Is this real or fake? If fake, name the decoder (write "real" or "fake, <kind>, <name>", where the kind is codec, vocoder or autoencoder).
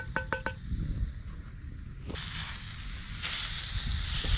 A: real